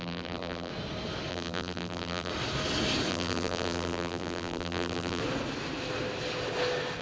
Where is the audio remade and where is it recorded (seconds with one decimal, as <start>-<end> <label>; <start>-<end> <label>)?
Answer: 0.0-0.7 remade; 0.7-1.3 recorded; 1.3-2.3 remade; 2.3-3.1 recorded; 3.1-5.2 remade; 5.2-7.0 recorded